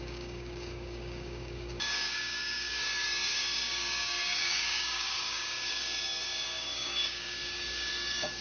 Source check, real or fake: fake